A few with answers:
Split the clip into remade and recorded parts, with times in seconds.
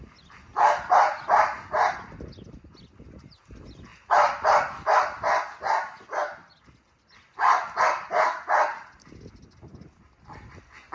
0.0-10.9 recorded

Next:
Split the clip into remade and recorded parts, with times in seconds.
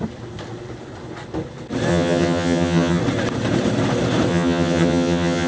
0.0-1.9 recorded; 1.9-3.0 remade; 3.0-4.3 recorded; 4.3-5.5 remade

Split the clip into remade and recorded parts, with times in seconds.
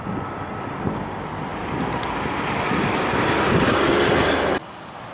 0.0-5.1 recorded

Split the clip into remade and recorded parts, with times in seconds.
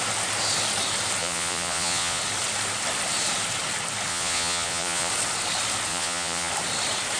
0.0-1.2 recorded; 1.2-2.2 remade; 2.2-4.1 recorded; 4.1-5.1 remade; 5.1-5.9 recorded; 5.9-6.5 remade; 6.5-7.2 recorded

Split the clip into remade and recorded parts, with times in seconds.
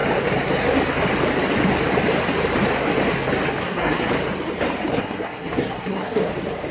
0.0-3.6 recorded; 3.6-4.1 remade; 4.1-4.9 recorded; 4.9-6.3 remade; 6.3-6.7 recorded